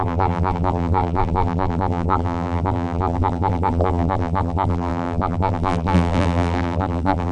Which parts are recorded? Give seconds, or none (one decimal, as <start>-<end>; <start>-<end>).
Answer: none